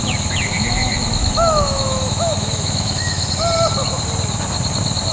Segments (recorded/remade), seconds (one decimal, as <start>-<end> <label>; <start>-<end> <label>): 0.0-0.5 recorded; 0.5-3.3 remade; 3.3-5.1 recorded